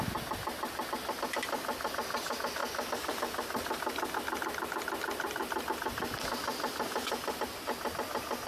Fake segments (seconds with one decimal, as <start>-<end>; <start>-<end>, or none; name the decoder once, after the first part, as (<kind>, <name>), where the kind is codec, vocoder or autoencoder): none